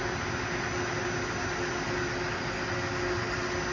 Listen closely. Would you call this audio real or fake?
real